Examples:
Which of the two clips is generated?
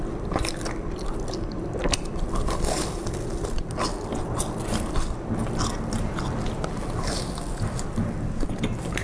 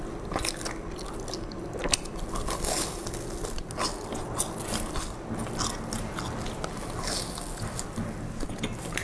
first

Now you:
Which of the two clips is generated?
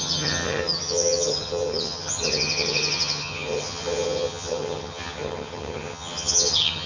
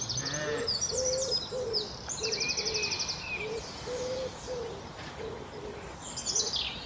first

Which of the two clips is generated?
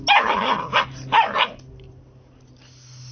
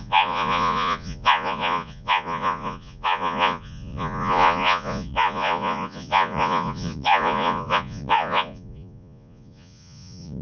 second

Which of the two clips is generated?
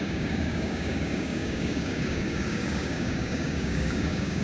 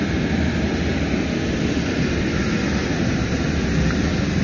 first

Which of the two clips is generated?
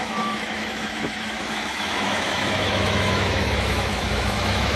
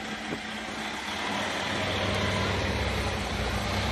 first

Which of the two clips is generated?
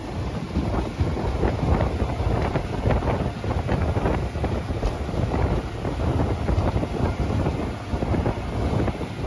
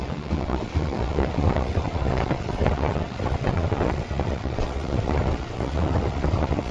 second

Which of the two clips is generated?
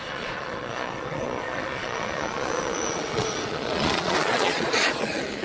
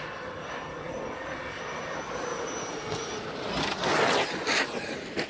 first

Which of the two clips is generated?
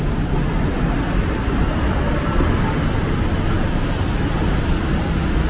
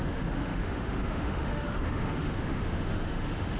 second